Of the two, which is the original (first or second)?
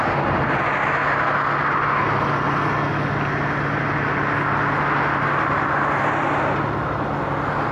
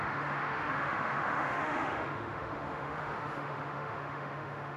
first